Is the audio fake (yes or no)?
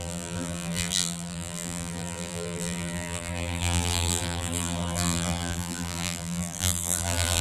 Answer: yes